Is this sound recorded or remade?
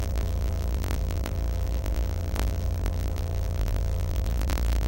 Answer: remade